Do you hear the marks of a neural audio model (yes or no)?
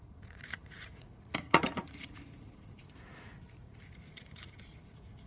yes